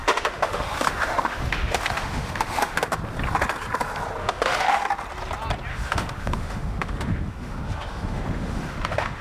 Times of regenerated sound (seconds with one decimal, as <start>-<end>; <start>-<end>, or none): 0.0-3.0; 4.2-4.9; 5.7-9.2